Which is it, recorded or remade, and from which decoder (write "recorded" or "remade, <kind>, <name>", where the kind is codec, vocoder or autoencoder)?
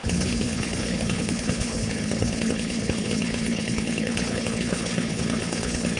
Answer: remade, codec, HILCodec